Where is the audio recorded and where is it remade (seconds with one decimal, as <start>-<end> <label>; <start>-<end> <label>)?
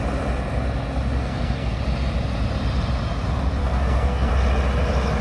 0.0-1.2 recorded; 1.2-1.8 remade; 1.8-3.6 recorded; 3.6-4.3 remade; 4.3-5.2 recorded